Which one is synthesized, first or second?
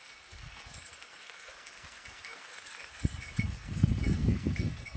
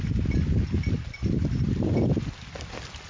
first